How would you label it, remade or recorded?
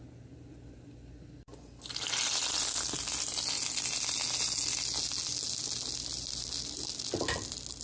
recorded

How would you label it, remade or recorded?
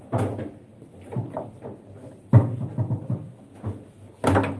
recorded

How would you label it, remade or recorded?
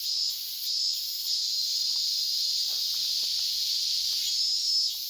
remade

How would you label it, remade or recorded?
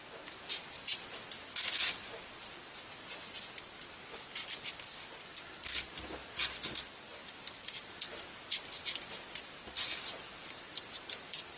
recorded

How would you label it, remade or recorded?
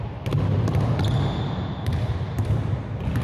recorded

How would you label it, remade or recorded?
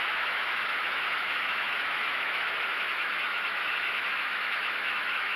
remade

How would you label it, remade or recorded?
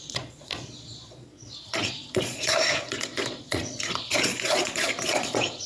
remade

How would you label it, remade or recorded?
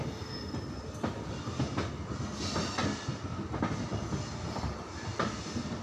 recorded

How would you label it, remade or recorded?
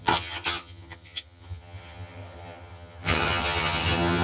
remade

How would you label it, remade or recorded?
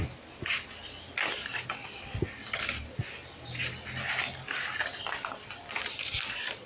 recorded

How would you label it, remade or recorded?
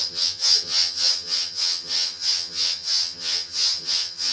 remade